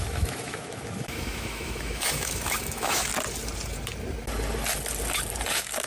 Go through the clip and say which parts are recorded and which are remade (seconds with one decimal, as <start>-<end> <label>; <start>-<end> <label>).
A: 0.0-3.1 remade; 3.1-5.5 recorded; 5.5-5.9 remade